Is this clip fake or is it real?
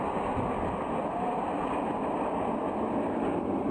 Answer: real